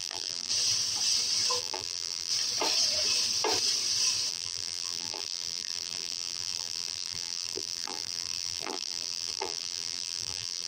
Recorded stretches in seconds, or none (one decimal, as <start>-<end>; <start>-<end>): 0.5-1.6; 2.3-4.3

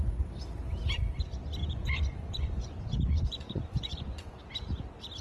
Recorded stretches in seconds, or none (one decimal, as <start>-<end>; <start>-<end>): 0.0-1.6; 4.4-5.2